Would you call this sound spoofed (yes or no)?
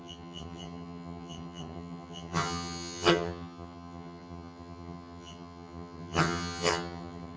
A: yes